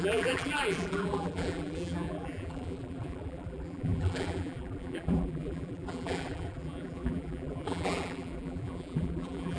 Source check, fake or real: fake